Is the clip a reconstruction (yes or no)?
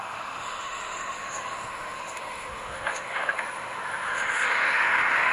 yes